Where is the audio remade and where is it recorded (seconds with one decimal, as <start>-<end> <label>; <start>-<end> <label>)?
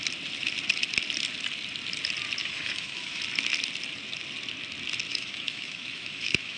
0.0-2.4 recorded; 2.4-3.2 remade; 3.2-5.1 recorded; 5.1-6.6 remade